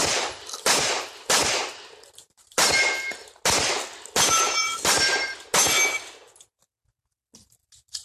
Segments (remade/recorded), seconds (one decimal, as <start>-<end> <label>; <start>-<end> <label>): 0.0-8.0 recorded